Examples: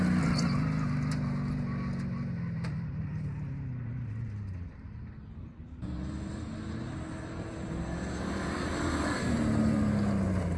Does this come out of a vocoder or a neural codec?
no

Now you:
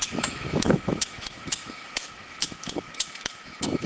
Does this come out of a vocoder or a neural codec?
yes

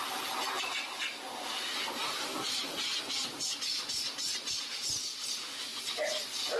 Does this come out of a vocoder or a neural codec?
no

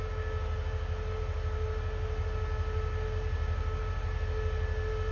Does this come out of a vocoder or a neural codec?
no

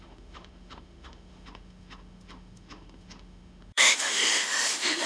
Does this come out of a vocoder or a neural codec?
yes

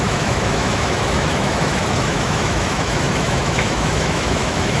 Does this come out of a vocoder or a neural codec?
yes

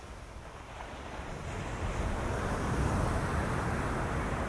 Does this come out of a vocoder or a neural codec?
no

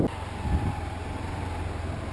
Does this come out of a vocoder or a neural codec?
no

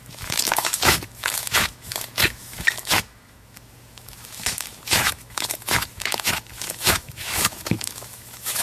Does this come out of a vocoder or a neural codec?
yes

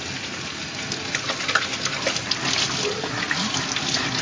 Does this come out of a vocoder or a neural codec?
no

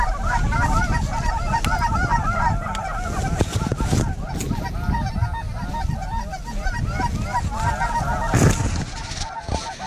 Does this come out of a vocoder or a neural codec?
no